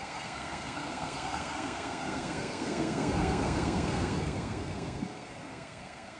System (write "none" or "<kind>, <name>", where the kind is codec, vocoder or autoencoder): codec, SNAC